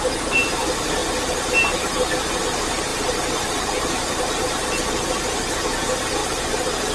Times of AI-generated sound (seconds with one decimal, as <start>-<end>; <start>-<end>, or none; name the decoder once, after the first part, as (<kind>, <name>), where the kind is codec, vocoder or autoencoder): none